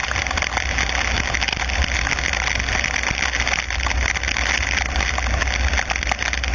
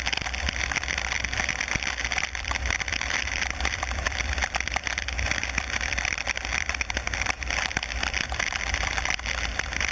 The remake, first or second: second